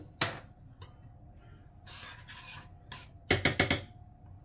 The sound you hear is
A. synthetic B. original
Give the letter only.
B